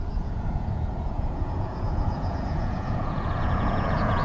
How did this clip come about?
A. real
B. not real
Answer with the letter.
B